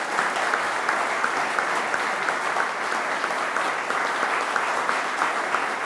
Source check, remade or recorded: recorded